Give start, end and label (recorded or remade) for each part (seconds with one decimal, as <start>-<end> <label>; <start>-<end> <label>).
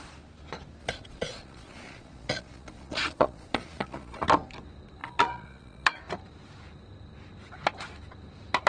0.0-0.8 recorded; 0.8-4.3 remade; 4.3-5.0 recorded; 5.0-6.0 remade; 6.0-8.7 recorded